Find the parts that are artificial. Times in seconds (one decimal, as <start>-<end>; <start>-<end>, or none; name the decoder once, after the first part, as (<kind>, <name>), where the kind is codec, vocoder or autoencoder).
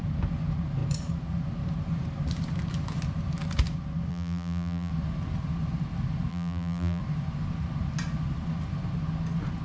4.1-4.9 (vocoder, BigVGAN v2); 6.3-7.0